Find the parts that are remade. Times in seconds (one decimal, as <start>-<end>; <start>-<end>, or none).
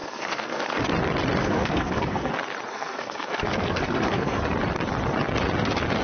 0.0-0.8; 1.4-2.3; 2.7-4.4